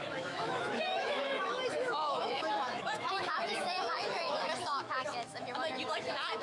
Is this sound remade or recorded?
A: remade